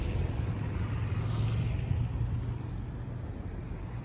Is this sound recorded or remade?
recorded